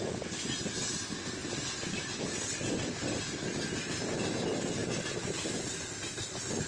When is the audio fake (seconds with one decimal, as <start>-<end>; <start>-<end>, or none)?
1.4-3.2